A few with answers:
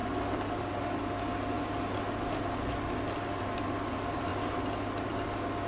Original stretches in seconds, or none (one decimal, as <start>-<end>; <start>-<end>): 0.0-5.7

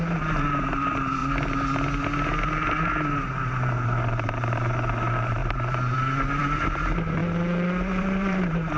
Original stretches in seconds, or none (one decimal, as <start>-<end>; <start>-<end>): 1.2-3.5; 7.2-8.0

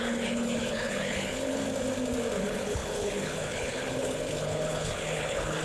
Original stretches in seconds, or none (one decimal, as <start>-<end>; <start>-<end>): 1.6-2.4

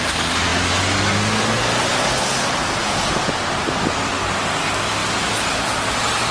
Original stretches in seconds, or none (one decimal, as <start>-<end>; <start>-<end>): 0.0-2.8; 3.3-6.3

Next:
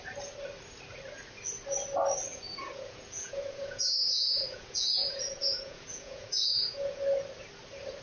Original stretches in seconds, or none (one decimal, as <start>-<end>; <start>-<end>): 0.0-2.3; 7.0-8.0

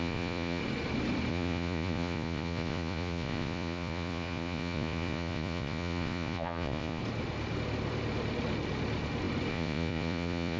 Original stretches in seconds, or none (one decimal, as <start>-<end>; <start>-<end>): 0.6-1.3; 7.0-9.5